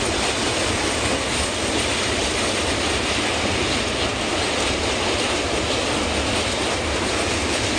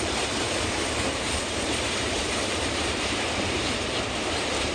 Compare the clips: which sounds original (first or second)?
first